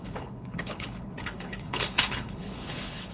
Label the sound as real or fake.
fake